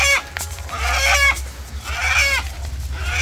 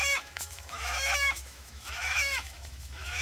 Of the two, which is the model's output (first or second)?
second